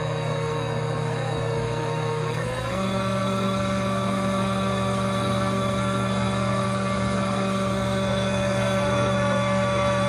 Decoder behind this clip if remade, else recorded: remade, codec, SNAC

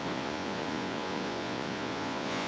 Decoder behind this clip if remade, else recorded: remade, vocoder, Vocos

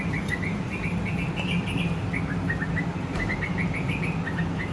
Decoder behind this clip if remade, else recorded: recorded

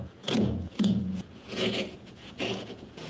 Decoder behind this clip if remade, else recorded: remade, vocoder, Vocos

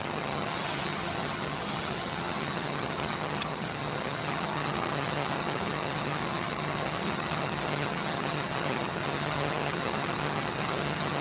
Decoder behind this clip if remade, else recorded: remade, vocoder, HiFi-GAN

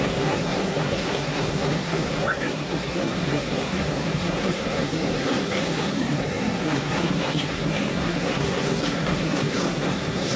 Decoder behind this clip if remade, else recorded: remade, codec, SNAC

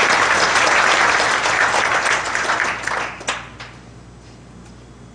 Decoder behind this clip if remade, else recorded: recorded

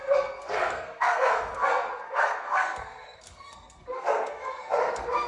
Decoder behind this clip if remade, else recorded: remade, codec, SNAC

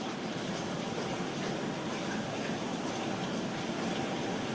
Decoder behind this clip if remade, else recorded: remade, vocoder, BigVGAN v2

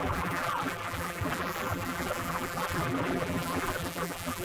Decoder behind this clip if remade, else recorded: remade, vocoder, BigVGAN v2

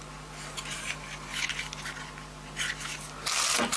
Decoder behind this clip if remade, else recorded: recorded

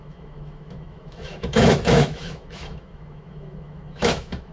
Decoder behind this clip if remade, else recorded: remade, autoencoder, DAC-VAE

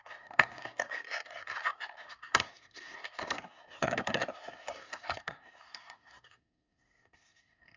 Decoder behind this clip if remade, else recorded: remade, codec, SNAC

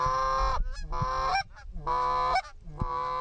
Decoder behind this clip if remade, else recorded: recorded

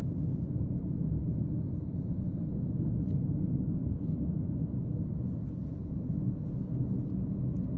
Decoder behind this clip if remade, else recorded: recorded